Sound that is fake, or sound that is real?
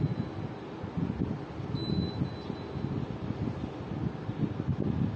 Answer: real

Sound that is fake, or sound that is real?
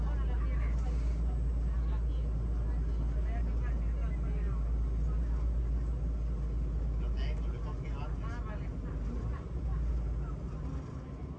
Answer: real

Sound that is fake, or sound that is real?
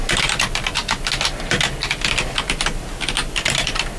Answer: real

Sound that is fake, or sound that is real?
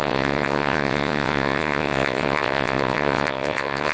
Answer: fake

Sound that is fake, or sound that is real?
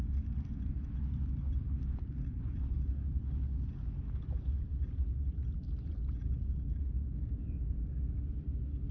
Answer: real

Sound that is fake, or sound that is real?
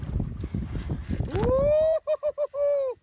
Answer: real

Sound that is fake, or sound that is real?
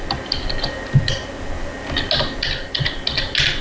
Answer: real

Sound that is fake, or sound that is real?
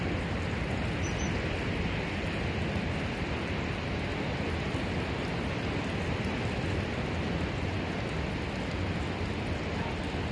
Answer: real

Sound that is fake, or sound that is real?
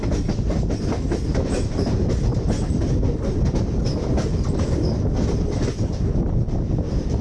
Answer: real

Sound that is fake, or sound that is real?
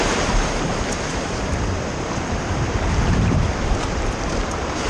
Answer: fake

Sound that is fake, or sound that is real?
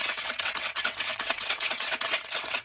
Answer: fake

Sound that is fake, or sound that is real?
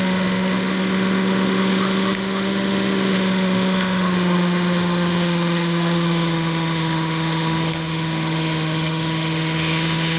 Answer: fake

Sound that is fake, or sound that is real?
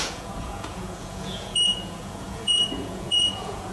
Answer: fake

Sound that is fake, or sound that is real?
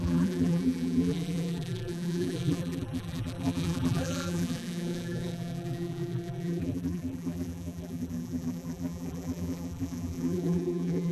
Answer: fake